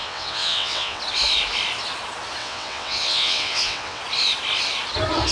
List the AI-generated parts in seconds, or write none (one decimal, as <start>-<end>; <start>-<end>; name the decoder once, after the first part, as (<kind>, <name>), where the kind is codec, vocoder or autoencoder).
0.0-1.0 (vocoder, WaveNeXt); 2.4-4.0